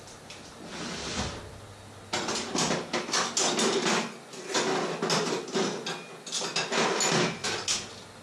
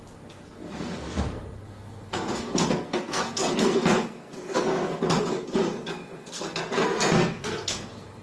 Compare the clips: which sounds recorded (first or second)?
first